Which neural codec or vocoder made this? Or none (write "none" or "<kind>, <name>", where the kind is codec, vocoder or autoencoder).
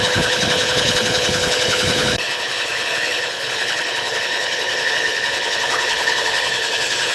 codec, HILCodec